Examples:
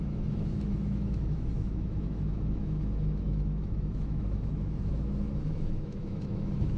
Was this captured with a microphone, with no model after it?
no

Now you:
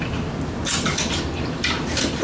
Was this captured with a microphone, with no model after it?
yes